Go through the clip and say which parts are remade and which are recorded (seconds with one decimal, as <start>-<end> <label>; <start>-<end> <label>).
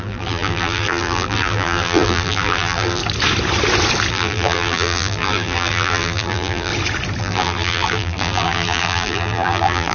0.0-3.0 remade; 3.0-4.1 recorded; 4.1-6.7 remade; 6.7-7.2 recorded; 7.2-9.9 remade